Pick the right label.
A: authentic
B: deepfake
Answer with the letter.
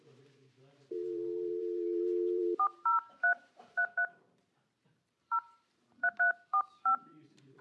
B